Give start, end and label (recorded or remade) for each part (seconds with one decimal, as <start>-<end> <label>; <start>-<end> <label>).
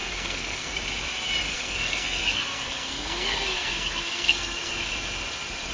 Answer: 0.0-0.7 remade; 0.7-1.5 recorded; 1.5-4.9 remade; 4.9-5.7 recorded